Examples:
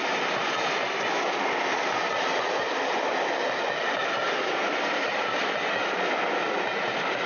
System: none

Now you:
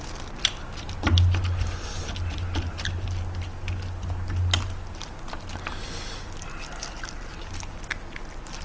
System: none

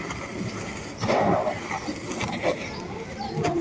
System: none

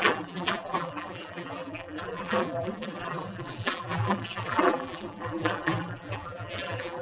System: vocoder, BigVGAN v2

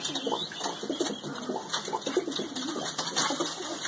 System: none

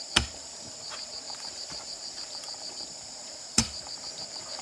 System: vocoder, BigVGAN v2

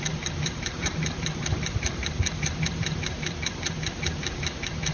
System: vocoder, BigVGAN v2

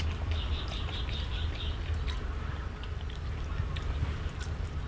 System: none